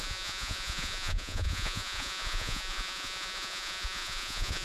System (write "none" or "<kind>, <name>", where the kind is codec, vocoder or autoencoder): vocoder, Vocos